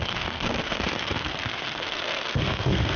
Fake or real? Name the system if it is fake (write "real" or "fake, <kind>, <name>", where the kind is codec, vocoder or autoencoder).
fake, codec, SNAC